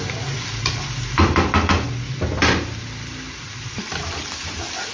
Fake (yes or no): no